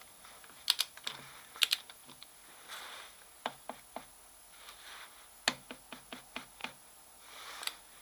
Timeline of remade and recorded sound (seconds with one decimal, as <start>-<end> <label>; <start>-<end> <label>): 0.0-8.0 recorded